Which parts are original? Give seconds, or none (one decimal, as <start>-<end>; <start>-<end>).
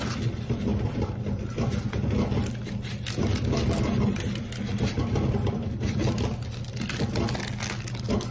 0.0-8.3